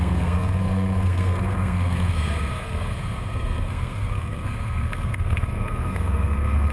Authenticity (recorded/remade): remade